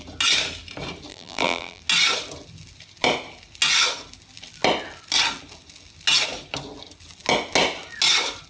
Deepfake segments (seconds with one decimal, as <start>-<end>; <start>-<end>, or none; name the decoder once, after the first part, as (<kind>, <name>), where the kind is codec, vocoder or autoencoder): 1.1-1.8 (vocoder, BigVGAN v2)